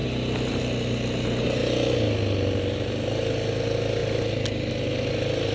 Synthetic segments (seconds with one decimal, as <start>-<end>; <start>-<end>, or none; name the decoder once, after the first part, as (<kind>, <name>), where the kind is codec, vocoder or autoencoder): none